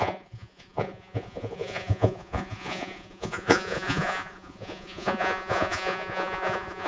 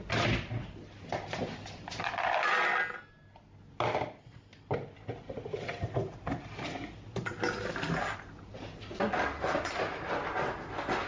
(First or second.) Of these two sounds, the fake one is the first